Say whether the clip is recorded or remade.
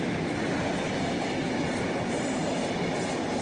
recorded